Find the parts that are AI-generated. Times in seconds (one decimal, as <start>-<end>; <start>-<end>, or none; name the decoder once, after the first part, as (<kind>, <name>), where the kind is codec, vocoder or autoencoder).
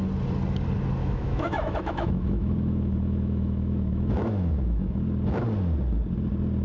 1.0-5.0 (autoencoder, DAC-VAE)